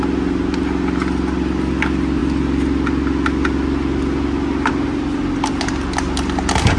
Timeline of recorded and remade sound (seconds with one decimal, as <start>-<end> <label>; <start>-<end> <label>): 0.0-6.8 recorded